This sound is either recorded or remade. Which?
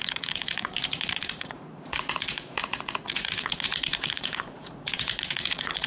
remade